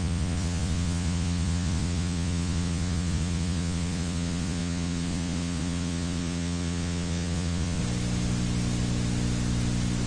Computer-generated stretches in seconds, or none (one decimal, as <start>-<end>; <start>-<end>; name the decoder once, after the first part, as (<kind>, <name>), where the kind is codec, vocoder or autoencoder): 0.0-7.8 (vocoder, Vocos)